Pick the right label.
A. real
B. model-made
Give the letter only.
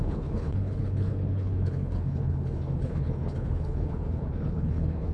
B